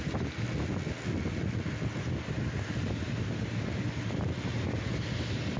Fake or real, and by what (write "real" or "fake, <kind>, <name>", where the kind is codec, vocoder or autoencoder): real